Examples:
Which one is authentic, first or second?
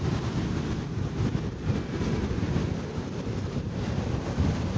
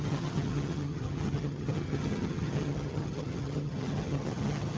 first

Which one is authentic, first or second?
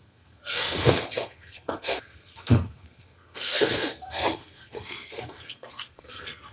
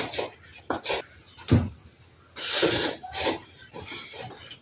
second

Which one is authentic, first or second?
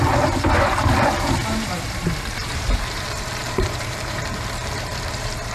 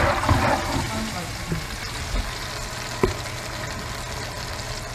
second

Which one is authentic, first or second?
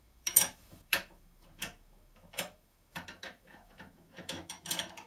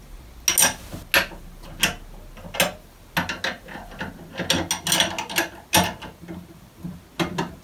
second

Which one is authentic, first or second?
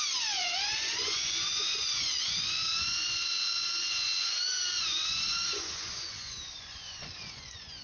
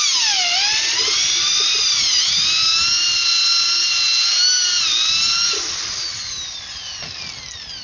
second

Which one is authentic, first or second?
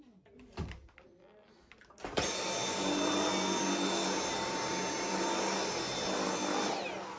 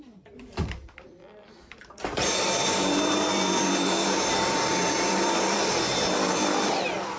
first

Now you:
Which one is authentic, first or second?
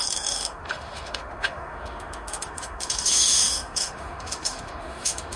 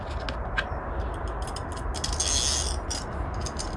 second